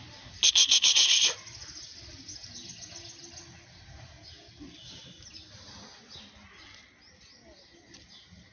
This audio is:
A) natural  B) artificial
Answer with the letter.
A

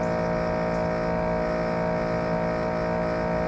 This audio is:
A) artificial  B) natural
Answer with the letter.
B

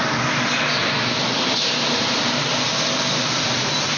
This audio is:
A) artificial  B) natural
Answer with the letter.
B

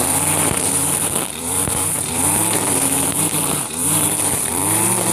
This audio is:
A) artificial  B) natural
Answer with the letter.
A